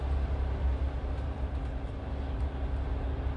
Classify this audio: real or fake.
real